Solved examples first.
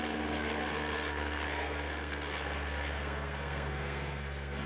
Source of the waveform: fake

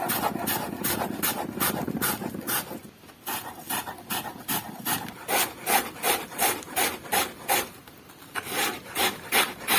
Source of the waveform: real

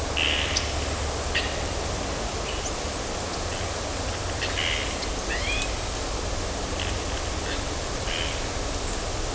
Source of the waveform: real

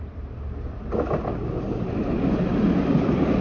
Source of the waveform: real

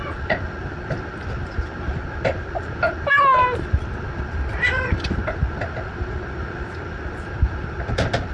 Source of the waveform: real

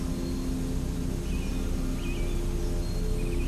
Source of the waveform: real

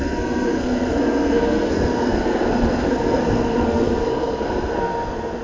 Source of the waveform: fake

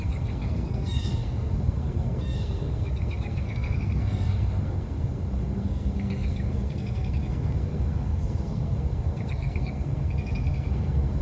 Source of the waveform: fake